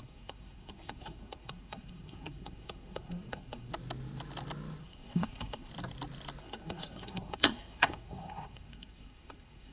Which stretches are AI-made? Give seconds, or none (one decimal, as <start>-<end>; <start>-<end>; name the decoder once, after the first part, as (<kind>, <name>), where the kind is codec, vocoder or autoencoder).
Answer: 0.0-3.7 (codec, SNAC); 4.8-5.7; 6.4-9.7